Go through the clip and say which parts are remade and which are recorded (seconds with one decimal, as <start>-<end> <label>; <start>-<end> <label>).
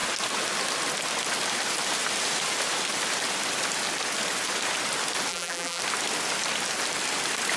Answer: 0.0-5.3 recorded; 5.3-5.8 remade; 5.8-7.6 recorded